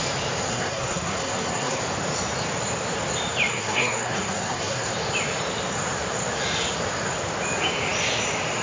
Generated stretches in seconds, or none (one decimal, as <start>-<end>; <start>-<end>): 0.5-1.8; 3.5-4.9